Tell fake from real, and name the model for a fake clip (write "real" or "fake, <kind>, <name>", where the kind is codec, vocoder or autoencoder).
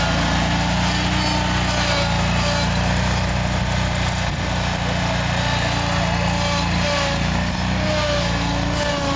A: real